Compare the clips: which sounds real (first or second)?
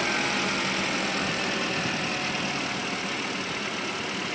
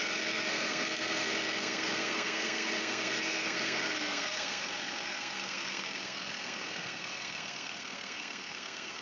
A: first